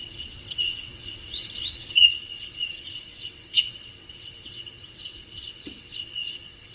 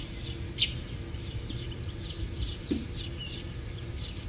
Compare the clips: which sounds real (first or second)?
second